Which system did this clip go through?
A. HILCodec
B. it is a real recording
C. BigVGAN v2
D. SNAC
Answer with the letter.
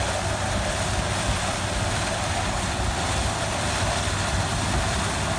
B